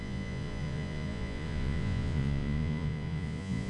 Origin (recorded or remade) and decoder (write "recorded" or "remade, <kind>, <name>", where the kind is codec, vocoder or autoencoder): remade, vocoder, Vocos